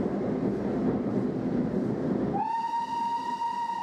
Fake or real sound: real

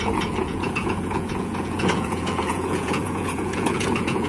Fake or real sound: fake